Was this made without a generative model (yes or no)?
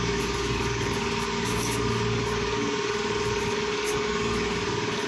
no